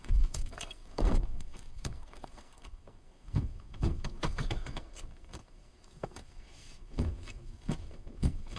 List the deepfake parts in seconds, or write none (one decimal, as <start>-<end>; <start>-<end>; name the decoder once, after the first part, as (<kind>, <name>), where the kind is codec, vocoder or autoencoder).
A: 0.0-8.6 (codec, SNAC)